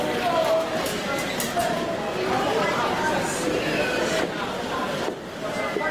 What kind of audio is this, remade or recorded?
recorded